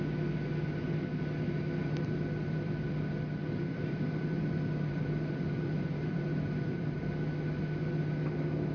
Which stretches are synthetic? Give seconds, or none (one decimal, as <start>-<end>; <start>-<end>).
1.8-2.9; 3.4-7.0

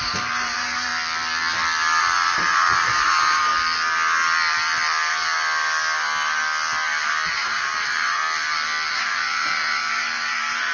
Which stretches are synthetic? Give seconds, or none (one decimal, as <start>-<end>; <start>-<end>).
0.0-0.9; 2.0-3.5; 7.3-8.2; 8.9-10.7

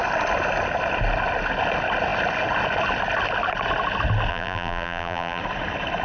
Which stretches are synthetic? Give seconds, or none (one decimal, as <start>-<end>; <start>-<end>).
4.3-5.4

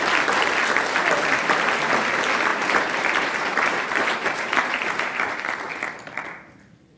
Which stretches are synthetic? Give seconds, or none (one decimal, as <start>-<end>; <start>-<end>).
2.5-5.4